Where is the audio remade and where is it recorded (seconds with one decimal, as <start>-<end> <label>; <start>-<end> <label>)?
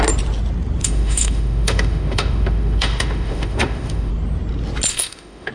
0.0-0.8 recorded; 0.8-4.1 remade; 4.1-4.9 recorded; 4.9-5.5 remade